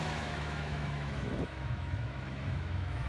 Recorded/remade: remade